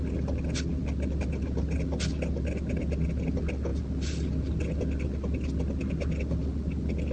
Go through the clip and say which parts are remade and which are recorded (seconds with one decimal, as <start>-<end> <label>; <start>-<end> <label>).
0.0-7.1 recorded